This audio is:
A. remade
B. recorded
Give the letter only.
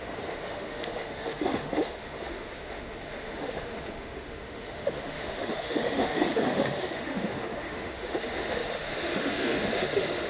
A